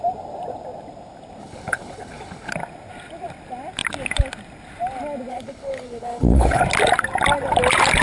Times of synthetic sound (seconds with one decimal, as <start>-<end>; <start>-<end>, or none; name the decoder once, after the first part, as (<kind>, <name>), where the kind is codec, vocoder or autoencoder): 1.4-2.5 (codec, HILCodec); 5.3-6.6